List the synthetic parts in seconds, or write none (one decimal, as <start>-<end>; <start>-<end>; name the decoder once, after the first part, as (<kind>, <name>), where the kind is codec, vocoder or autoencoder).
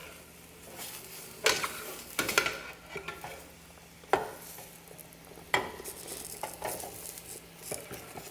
none